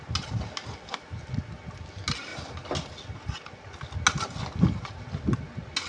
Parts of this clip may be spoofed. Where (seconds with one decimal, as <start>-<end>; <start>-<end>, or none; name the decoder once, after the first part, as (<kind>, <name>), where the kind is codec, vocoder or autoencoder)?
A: none